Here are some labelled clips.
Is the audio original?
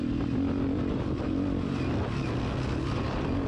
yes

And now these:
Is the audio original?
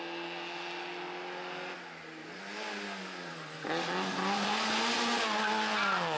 yes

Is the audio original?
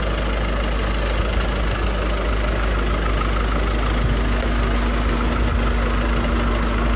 yes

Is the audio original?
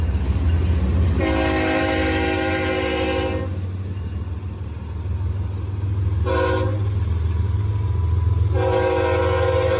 yes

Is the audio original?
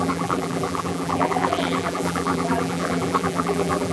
no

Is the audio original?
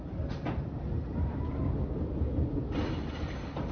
yes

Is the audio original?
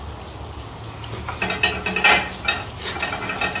yes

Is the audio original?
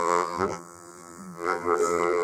no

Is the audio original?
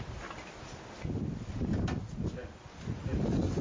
yes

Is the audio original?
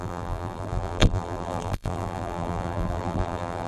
no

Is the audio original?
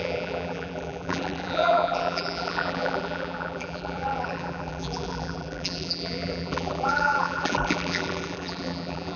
no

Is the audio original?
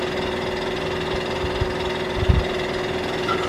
yes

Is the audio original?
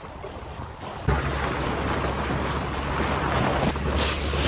yes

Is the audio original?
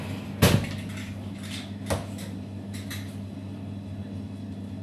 yes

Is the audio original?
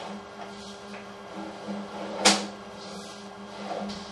yes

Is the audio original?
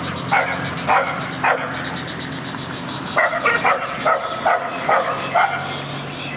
yes